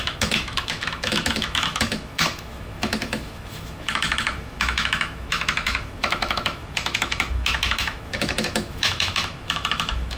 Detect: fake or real fake